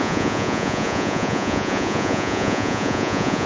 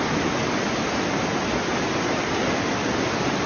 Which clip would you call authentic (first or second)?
second